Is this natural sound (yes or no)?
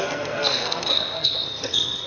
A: no